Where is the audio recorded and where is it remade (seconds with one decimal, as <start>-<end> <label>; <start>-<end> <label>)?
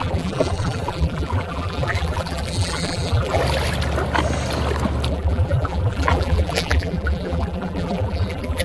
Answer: 0.0-3.4 remade; 3.4-5.1 recorded; 5.1-8.6 remade